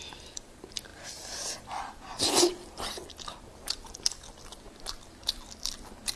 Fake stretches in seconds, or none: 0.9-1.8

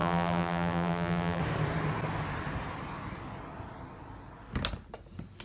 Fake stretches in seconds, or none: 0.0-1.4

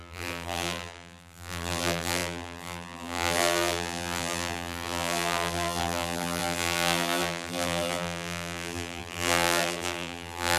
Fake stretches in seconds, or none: 0.0-10.6

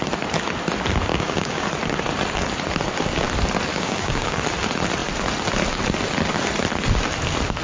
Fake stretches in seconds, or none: 1.1-1.6; 3.7-4.4